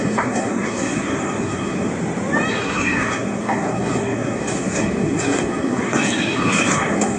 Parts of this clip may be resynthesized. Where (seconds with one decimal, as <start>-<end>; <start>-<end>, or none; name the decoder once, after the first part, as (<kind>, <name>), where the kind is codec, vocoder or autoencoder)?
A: 0.0-1.9 (codec, SNAC); 2.5-7.2